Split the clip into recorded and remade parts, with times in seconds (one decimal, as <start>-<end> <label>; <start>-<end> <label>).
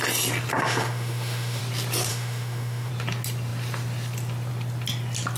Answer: 0.0-0.5 recorded; 0.5-1.6 remade; 1.6-2.1 recorded; 2.1-2.9 remade; 2.9-5.4 recorded